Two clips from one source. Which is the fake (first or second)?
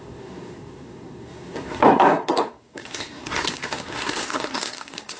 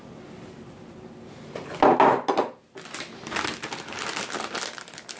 first